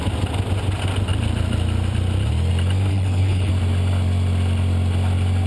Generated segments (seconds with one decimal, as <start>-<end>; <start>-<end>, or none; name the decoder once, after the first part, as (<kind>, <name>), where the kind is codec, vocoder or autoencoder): 2.9-3.5 (codec, HILCodec)